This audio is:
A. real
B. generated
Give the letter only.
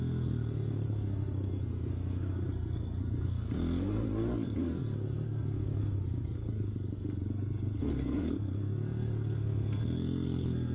B